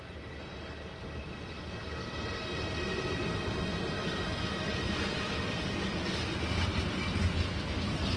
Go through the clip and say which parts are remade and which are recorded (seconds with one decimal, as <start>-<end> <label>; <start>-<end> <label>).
0.0-8.2 recorded